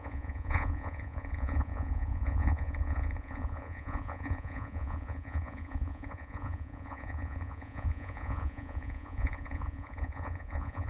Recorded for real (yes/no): no